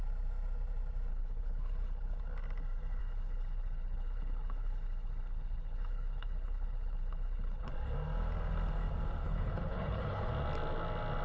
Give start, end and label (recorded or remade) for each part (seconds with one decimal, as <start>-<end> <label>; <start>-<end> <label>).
0.0-1.1 recorded; 1.1-2.2 remade; 2.2-3.0 recorded; 3.0-7.7 remade; 7.7-9.2 recorded; 9.2-10.3 remade; 10.3-11.2 recorded